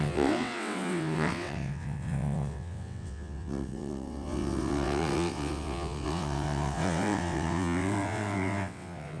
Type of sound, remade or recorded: remade